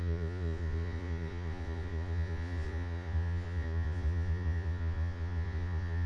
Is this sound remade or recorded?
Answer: remade